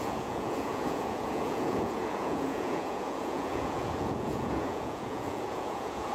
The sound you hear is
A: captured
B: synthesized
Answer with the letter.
B